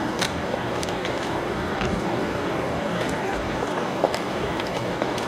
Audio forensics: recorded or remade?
remade